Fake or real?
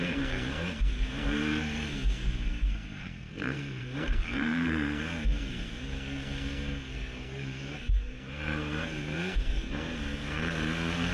fake